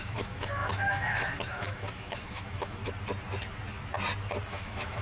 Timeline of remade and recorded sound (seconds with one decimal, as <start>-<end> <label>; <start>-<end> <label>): 0.0-2.8 remade; 2.8-4.5 recorded; 4.5-5.0 remade